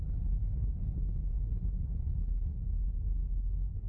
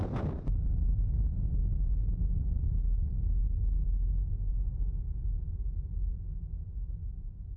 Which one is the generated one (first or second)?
first